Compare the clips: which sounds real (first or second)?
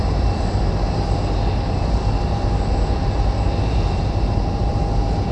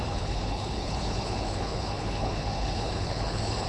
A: first